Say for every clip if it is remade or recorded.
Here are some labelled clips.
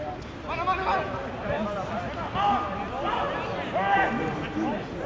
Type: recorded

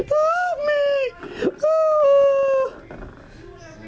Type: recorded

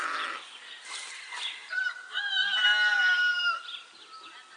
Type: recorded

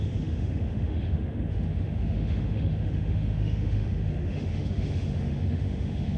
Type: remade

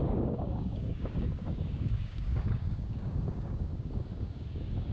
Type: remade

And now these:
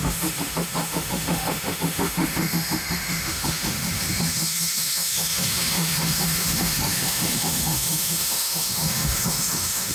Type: remade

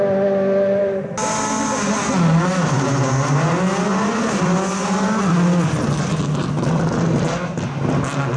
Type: recorded